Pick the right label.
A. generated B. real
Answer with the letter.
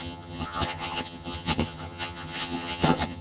A